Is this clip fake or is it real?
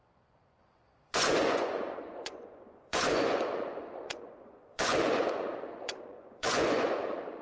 fake